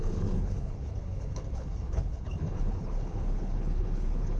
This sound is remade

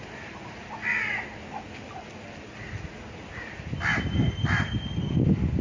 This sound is recorded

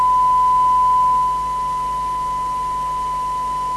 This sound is recorded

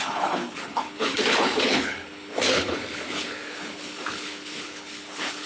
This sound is remade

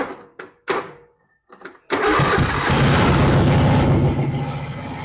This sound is recorded